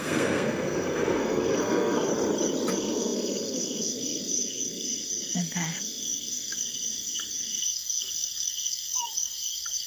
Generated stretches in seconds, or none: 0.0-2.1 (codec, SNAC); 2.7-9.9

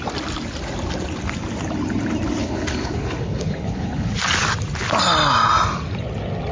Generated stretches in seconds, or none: 2.4-4.1 (codec, HILCodec)

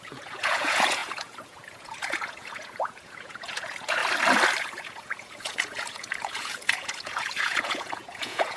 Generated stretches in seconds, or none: 0.0-4.0 (vocoder, Vocos); 4.6-8.6

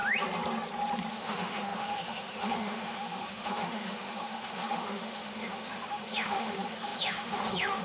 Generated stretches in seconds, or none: 1.1-7.8 (autoencoder, DAC-VAE)

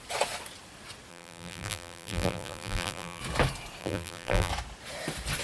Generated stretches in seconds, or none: 1.1-3.2 (vocoder, BigVGAN v2); 3.8-4.5

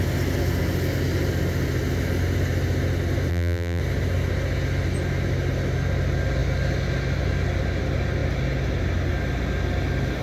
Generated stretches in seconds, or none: 3.3-3.8 (vocoder, BigVGAN v2)

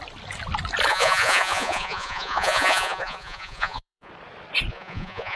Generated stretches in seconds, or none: 0.9-4.1 (vocoder, Vocos); 4.7-5.4

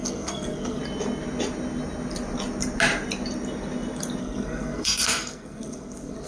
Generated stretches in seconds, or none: 0.0-0.8 (codec, SNAC); 4.2-6.3